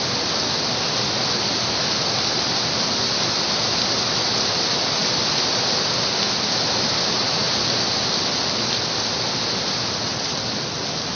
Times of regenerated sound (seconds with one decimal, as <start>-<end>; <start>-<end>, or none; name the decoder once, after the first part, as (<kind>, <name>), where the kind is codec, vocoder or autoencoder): none